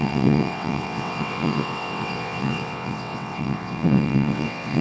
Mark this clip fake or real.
fake